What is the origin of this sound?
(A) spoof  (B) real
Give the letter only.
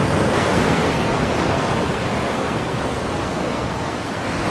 A